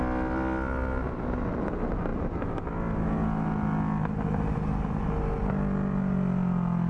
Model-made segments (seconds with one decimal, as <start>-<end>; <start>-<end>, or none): none

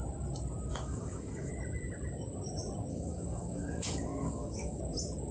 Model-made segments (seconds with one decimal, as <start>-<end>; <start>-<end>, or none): 0.7-1.5; 2.9-4.8